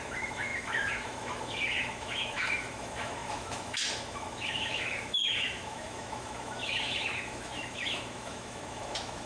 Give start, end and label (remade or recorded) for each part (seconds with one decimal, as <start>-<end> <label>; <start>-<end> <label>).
0.0-9.3 remade